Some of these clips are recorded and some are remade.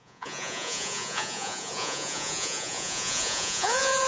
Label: remade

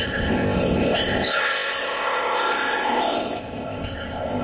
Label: remade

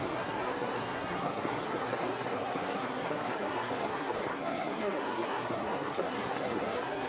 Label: remade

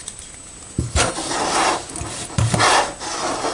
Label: remade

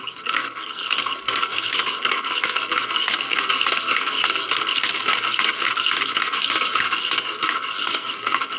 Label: remade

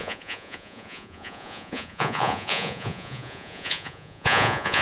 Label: remade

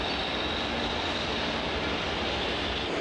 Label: recorded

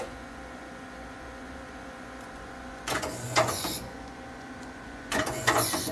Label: remade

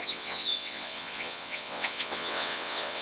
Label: remade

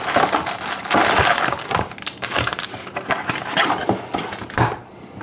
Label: recorded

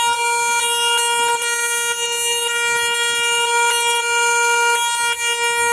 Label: recorded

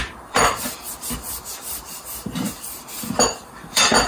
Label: remade